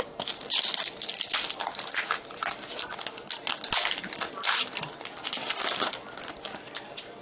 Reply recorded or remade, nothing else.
recorded